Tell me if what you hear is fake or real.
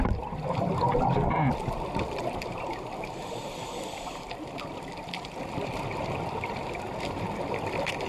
fake